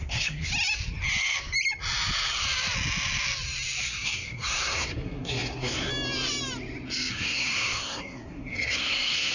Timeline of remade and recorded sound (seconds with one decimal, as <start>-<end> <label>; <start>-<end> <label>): 0.0-0.5 remade; 0.5-3.8 recorded; 3.8-5.9 remade; 5.9-7.1 recorded; 7.1-9.3 remade